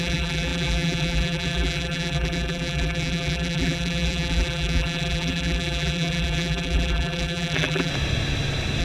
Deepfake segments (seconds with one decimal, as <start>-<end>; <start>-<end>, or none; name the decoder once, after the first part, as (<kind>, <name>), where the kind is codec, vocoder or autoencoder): 0.0-7.9 (vocoder, BigVGAN v2)